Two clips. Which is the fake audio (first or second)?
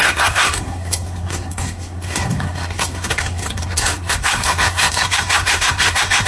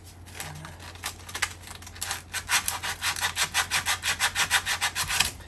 first